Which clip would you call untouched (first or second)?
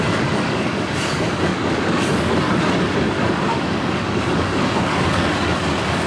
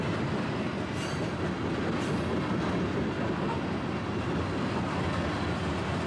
second